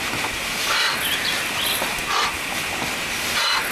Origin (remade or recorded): recorded